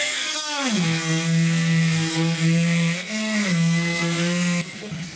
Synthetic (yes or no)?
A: yes